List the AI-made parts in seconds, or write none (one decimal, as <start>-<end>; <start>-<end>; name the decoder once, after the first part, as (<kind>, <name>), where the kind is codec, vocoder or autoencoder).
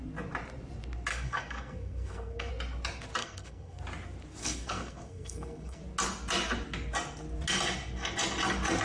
1.1-2.5 (codec, SNAC); 3.2-3.8; 4.4-5.8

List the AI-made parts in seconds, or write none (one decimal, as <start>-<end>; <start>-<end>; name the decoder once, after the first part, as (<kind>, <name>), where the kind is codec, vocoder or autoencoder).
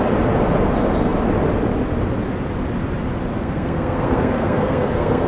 3.3-5.3 (codec, SNAC)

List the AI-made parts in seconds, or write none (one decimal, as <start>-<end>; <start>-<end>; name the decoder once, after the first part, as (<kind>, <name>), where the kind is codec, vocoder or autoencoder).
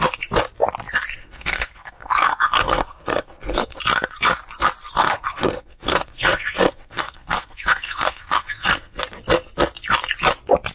1.2-3.8 (codec, SNAC); 5.0-9.0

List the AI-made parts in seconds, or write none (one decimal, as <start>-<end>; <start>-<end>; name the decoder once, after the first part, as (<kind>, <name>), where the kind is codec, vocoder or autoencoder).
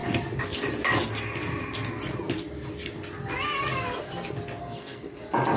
4.6-5.1 (codec, SNAC)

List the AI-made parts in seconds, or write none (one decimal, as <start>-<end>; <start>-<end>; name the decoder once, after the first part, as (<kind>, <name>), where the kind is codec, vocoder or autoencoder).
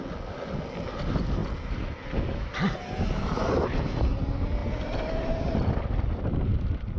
none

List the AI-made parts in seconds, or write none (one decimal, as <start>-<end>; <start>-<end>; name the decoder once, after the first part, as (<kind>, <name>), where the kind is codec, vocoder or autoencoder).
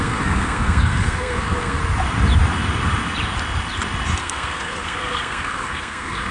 0.0-1.8 (codec, SNAC); 4.2-6.3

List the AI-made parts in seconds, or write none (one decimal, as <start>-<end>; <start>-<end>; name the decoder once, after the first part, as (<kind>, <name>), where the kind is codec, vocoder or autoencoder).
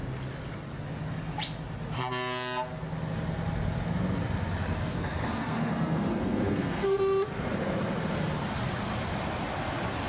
4.8-7.0 (codec, SNAC)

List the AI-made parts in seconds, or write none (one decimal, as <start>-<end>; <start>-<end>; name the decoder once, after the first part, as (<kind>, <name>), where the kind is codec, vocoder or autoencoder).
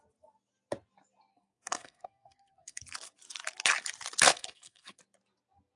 1.3-2.8 (codec, SNAC); 4.3-5.0